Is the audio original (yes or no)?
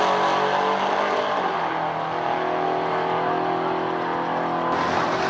yes